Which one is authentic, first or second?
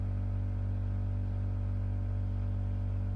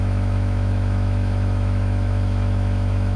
first